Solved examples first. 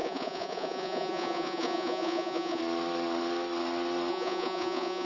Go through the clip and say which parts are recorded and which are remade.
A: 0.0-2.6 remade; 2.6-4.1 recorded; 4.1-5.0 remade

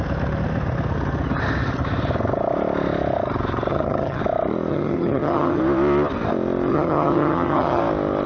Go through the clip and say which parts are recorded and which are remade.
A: 0.0-3.7 recorded; 3.7-4.2 remade; 4.2-4.7 recorded; 4.7-5.6 remade; 5.6-6.7 recorded; 6.7-7.8 remade; 7.8-8.3 recorded

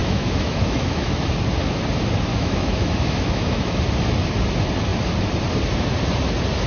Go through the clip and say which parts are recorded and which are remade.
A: 0.0-1.2 remade; 1.2-2.3 recorded; 2.3-3.8 remade; 3.8-6.7 recorded

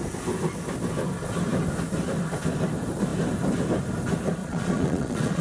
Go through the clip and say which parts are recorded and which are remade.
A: 0.0-4.4 recorded; 4.4-5.4 remade

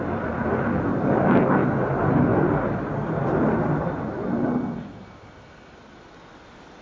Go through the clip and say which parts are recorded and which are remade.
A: 0.0-6.8 recorded